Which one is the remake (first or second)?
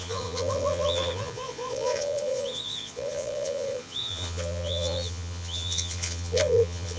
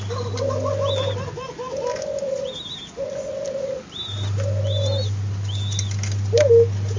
first